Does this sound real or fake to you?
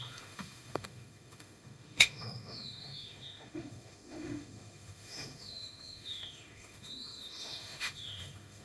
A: fake